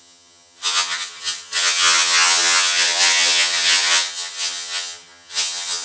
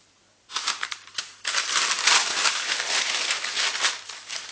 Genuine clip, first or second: second